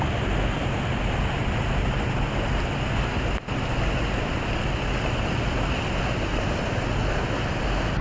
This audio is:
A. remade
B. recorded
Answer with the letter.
B